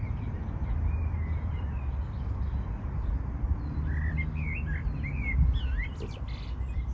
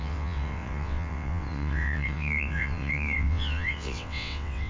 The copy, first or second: second